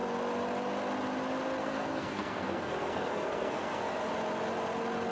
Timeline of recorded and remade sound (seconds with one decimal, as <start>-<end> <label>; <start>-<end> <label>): 0.0-1.6 recorded; 1.6-4.1 remade; 4.1-5.1 recorded